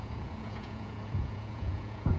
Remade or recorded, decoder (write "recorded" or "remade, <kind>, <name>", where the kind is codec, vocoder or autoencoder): remade, vocoder, Vocos